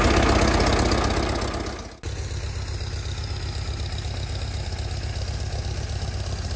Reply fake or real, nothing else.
real